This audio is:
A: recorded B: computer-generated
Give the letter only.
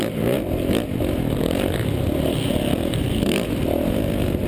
B